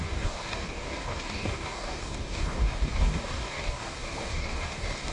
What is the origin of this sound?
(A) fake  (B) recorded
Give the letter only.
A